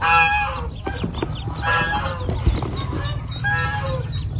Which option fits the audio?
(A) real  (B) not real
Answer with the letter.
A